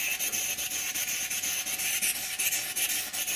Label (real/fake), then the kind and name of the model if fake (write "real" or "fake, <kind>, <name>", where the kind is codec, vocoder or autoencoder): real